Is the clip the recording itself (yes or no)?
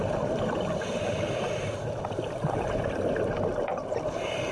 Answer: yes